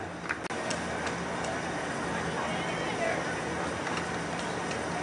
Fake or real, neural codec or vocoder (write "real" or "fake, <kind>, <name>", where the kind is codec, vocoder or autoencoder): real